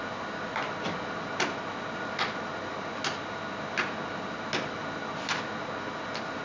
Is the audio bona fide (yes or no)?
yes